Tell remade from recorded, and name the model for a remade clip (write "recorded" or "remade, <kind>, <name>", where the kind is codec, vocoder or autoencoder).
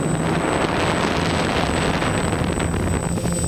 recorded